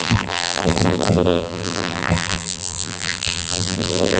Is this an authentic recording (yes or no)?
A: no